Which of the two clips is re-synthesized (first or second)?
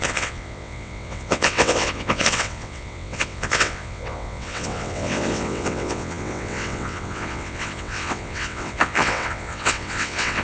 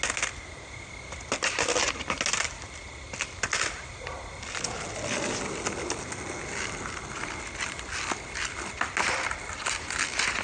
first